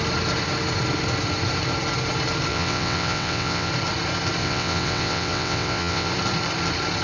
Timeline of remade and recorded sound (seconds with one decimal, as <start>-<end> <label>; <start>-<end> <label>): 0.0-2.5 recorded; 2.5-3.7 remade; 3.7-4.4 recorded; 4.4-6.1 remade; 6.1-7.0 recorded